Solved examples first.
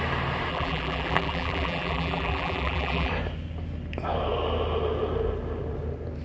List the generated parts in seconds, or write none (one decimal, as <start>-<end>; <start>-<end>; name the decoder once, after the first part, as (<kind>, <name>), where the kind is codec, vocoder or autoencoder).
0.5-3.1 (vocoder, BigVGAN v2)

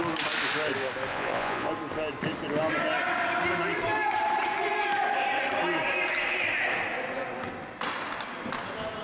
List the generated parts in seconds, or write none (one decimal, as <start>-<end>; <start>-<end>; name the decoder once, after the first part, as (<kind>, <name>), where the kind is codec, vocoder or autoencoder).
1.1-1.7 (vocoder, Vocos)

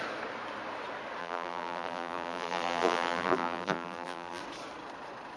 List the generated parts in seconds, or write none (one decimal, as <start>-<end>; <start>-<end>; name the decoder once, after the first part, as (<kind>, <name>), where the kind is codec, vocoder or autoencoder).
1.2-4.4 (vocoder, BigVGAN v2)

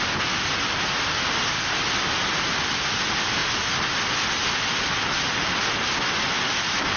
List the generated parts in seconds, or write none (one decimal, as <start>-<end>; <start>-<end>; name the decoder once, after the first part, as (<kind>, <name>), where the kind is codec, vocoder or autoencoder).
none